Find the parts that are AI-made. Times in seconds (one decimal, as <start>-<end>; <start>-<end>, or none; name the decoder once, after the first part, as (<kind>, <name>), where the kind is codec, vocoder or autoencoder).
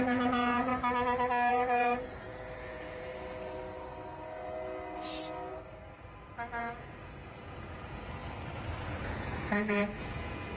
0.0-0.7 (vocoder, Vocos); 1.5-3.1; 6.6-8.2; 8.8-10.6